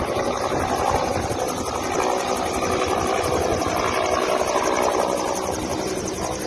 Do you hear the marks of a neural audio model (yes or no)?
no